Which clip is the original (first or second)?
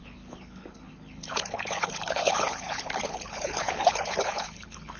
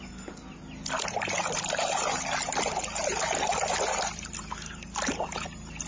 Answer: second